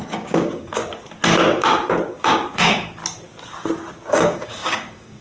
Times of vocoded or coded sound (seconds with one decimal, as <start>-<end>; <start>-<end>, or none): 0.0-0.8; 2.2-3.0; 4.1-5.2